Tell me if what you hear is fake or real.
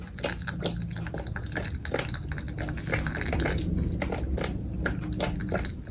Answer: real